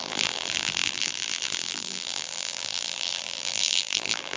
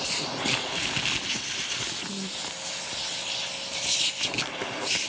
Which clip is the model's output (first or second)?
first